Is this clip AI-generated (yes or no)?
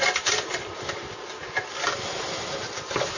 no